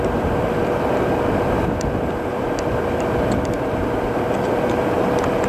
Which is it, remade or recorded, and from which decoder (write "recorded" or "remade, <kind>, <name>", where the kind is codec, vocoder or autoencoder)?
remade, vocoder, BigVGAN v2